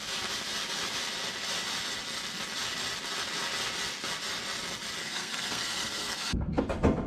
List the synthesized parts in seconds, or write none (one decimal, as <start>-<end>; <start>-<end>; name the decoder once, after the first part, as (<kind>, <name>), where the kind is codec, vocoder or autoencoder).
5.0-6.6 (codec, SNAC)